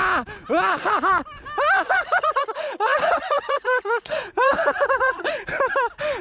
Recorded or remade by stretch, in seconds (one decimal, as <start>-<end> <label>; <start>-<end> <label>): 0.0-1.9 recorded; 1.9-5.5 remade; 5.5-6.2 recorded